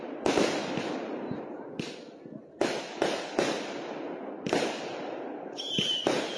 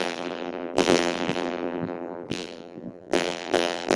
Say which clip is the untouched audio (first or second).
first